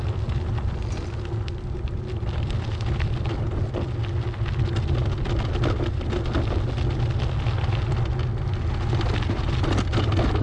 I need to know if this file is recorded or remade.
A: recorded